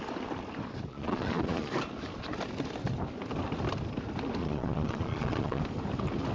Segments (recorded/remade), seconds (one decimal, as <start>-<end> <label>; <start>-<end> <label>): 0.0-0.9 recorded; 0.9-1.7 remade; 1.7-4.4 recorded; 4.4-5.6 remade; 5.6-6.3 recorded